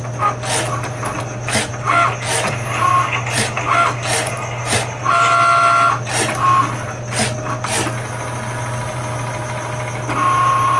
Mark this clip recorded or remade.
recorded